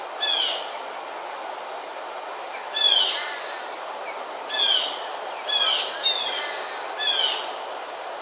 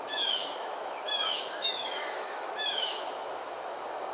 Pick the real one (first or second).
first